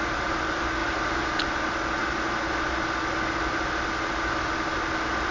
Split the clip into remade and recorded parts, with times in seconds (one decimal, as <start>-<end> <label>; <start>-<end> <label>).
0.0-0.8 recorded; 0.8-1.4 remade; 1.4-5.3 recorded